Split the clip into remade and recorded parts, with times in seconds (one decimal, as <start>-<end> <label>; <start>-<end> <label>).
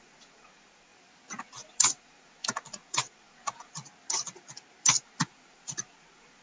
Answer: 0.0-0.9 remade; 0.9-1.4 recorded; 1.4-3.8 remade; 3.8-5.0 recorded; 5.0-6.4 remade